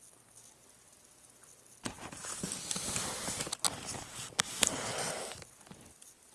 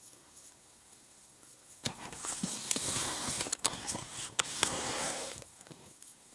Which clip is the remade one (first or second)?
second